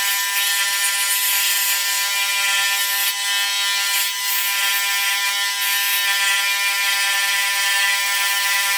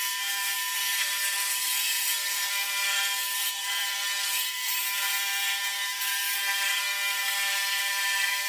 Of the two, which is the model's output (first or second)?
second